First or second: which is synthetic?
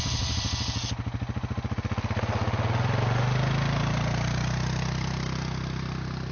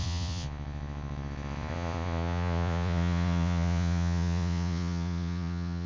second